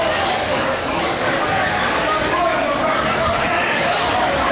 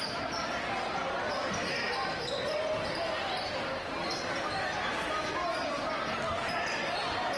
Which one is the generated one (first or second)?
first